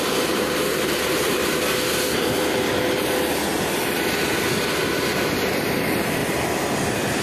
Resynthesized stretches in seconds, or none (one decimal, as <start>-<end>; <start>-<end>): 0.0-1.4; 5.5-6.2